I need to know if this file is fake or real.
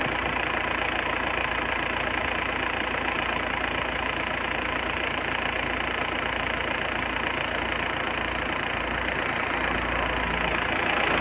real